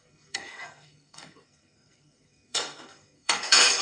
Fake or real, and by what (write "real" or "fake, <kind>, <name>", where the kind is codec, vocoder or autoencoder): fake, codec, SNAC